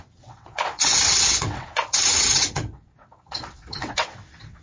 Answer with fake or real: fake